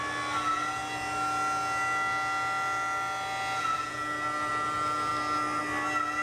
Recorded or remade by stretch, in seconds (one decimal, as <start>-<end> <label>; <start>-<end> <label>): 0.0-6.2 recorded